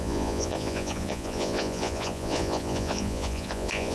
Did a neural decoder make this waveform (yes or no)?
yes